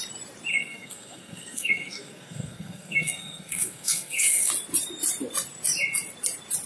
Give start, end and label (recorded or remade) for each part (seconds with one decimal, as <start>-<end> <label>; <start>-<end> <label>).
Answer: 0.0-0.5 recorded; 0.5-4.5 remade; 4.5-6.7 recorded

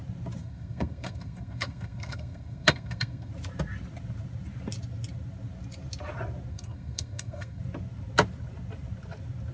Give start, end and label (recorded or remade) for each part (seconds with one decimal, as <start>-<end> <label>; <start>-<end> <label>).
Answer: 0.0-0.4 recorded; 0.4-3.3 remade; 3.3-6.5 recorded; 6.5-7.6 remade; 7.6-9.5 recorded

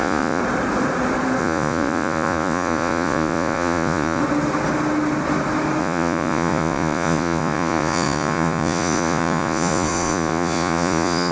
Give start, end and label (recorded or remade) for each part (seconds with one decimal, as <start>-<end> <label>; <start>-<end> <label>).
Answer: 0.0-0.4 remade; 0.4-1.4 recorded; 1.4-4.2 remade; 4.2-5.8 recorded; 5.8-11.3 remade

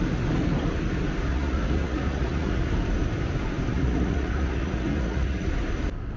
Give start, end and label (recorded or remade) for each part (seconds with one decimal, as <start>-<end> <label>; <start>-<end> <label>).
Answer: 0.0-1.3 recorded; 1.3-2.6 remade; 2.6-3.7 recorded; 3.7-5.5 remade; 5.5-6.2 recorded

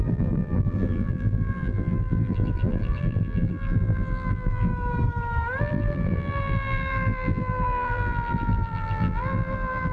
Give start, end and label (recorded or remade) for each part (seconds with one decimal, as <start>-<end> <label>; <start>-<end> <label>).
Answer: 0.0-4.7 remade; 4.7-5.6 recorded; 5.6-9.9 remade

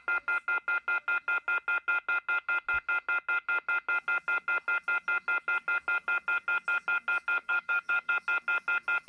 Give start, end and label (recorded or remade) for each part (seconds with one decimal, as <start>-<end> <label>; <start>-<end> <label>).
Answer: 0.0-7.4 recorded; 7.4-8.1 remade; 8.1-9.1 recorded